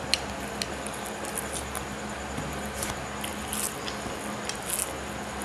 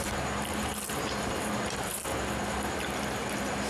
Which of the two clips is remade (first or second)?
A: second